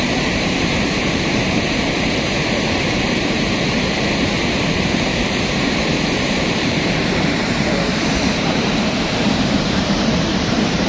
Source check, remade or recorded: remade